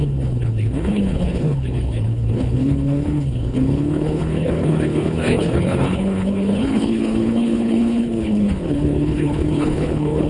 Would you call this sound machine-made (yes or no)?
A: yes